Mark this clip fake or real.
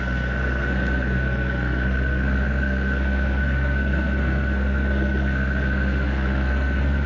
fake